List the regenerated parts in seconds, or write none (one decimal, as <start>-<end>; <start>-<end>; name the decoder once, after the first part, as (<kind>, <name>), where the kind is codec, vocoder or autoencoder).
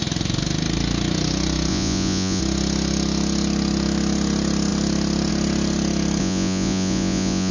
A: 1.7-2.4 (vocoder, Vocos); 6.2-7.5